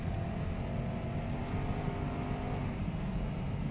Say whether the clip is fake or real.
real